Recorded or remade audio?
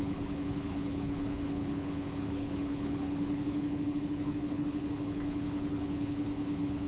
remade